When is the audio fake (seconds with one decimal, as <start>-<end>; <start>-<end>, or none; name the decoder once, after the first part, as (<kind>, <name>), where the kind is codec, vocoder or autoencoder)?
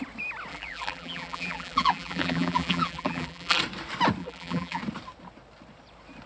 0.5-3.6 (vocoder, BigVGAN v2); 4.2-4.8